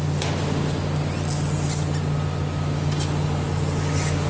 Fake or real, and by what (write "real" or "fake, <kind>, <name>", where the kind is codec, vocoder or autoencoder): real